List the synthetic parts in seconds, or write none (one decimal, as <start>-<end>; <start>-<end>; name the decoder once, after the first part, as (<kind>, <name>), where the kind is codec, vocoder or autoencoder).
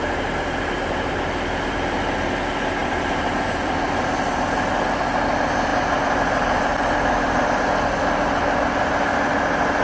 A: 2.8-3.7 (vocoder, BigVGAN v2); 5.7-7.5